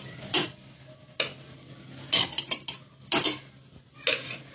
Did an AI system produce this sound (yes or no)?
no